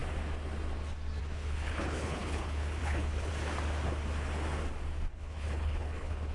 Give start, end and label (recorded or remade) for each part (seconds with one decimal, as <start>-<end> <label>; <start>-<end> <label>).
0.0-1.2 recorded; 1.2-3.3 remade; 3.3-5.1 recorded; 5.1-6.3 remade